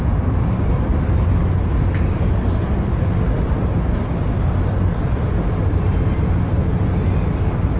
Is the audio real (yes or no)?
yes